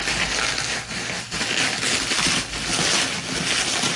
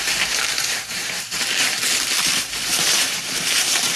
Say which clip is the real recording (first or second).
first